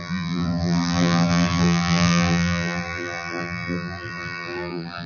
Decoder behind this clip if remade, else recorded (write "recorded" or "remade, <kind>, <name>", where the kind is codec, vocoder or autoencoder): remade, vocoder, BigVGAN v2